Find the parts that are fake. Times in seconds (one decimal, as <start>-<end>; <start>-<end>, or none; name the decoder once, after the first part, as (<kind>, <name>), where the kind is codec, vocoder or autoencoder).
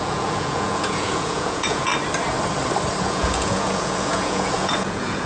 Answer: 0.0-1.9 (vocoder, Vocos); 3.0-5.3